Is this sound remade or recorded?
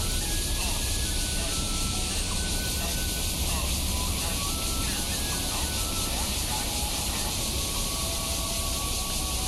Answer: recorded